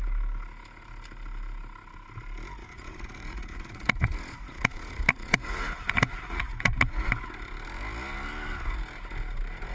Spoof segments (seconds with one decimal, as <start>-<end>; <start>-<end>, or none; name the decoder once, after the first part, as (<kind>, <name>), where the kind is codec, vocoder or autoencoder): 2.6-7.1 (vocoder, Vocos)